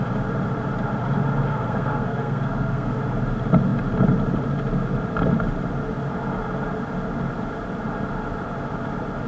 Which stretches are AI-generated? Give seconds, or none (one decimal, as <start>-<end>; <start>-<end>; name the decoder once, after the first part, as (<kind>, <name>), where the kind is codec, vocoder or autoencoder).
1.5-3.0 (codec, SNAC)